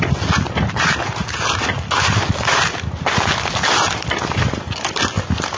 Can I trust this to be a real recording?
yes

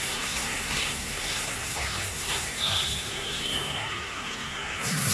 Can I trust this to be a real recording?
no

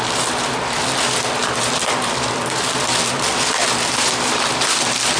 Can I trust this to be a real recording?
no